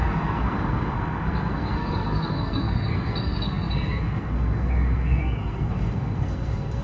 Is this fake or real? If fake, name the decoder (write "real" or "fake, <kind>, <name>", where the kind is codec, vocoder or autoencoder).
fake, codec, SNAC